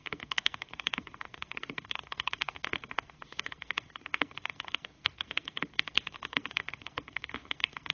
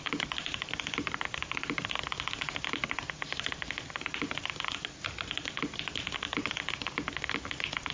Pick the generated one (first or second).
first